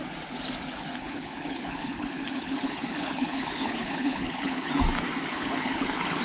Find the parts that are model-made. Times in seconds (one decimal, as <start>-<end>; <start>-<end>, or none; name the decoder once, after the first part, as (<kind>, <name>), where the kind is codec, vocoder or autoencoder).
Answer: 1.0-4.7 (codec, HILCodec); 5.3-6.2